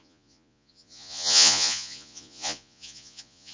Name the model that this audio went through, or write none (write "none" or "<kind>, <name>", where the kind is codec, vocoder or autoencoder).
vocoder, Vocos